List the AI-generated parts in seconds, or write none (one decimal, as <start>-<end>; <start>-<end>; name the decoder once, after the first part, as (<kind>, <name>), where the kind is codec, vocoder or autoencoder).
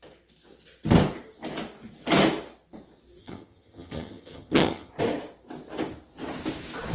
3.2-4.9 (vocoder, HiFi-GAN)